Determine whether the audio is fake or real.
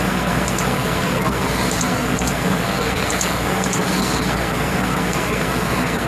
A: fake